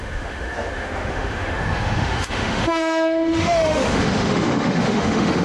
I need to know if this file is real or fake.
fake